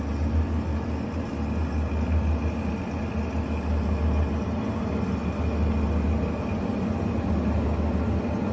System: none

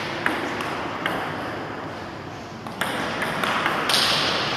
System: none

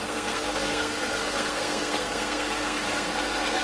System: codec, SNAC